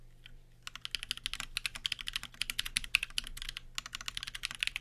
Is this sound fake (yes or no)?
no